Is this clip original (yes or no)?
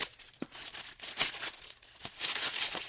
no